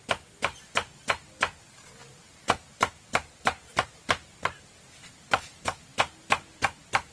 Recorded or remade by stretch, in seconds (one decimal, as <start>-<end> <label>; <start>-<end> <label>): 0.0-7.1 recorded